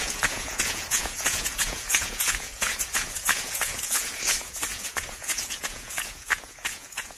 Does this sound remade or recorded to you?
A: remade